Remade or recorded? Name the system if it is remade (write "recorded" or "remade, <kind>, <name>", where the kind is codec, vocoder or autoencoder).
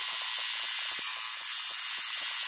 recorded